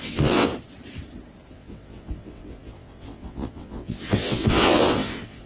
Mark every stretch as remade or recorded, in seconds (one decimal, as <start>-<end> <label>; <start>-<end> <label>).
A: 0.0-0.5 remade; 0.5-1.5 recorded; 1.5-5.5 remade